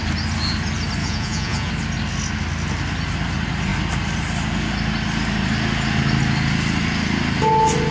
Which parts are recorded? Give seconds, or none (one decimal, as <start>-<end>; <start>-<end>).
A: 0.0-1.0; 1.7-7.9